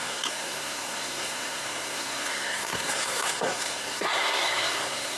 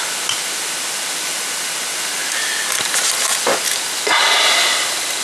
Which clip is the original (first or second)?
second